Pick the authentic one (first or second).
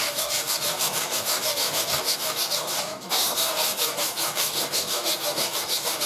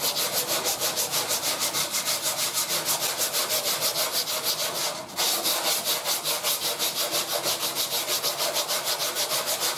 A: second